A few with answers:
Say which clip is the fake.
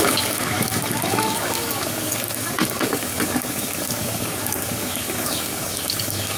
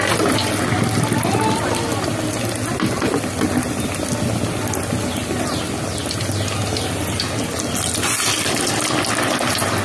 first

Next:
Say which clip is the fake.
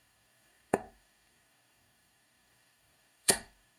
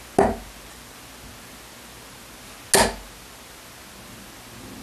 first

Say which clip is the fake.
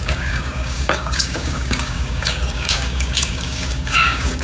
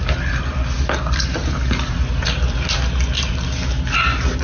first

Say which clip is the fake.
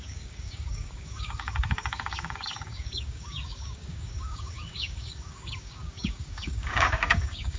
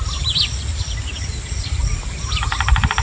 first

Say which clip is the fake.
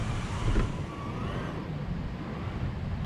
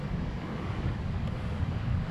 second